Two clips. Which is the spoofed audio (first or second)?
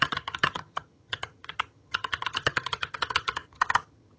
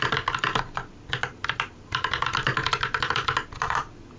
first